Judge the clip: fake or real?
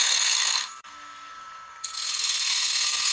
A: fake